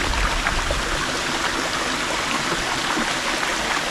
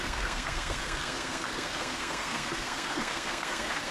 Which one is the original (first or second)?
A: first